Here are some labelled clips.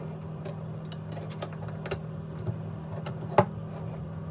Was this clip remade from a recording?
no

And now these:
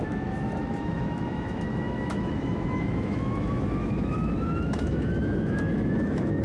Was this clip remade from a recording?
yes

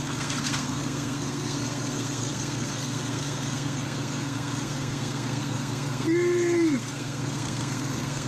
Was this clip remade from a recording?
yes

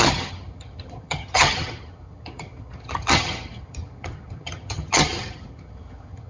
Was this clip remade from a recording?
yes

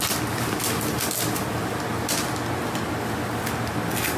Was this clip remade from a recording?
no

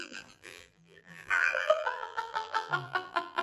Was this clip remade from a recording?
yes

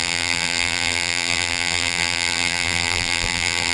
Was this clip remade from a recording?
yes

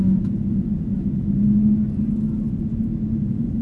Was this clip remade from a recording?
no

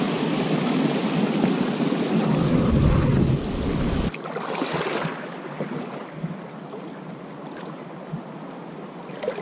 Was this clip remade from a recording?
no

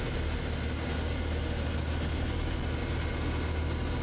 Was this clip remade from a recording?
no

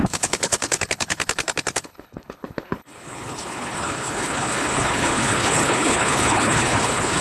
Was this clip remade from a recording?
yes